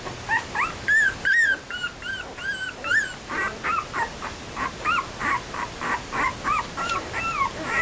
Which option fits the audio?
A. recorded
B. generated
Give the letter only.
B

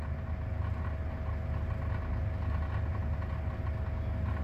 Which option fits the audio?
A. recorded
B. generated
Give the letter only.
A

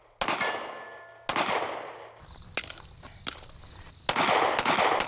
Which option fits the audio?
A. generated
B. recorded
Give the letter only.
B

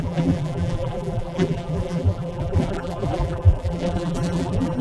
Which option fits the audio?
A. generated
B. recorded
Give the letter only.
A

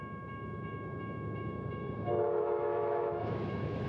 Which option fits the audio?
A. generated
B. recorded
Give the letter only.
A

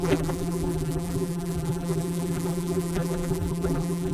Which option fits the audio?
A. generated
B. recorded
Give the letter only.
A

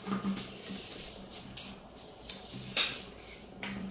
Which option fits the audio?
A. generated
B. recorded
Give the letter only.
B